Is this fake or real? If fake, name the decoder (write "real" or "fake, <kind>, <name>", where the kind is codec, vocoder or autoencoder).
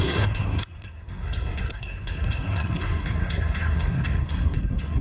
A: fake, codec, SNAC